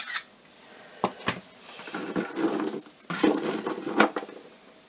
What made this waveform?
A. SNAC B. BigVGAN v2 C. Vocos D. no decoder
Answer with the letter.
D